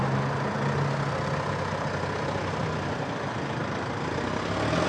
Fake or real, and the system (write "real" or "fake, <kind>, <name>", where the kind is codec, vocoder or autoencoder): real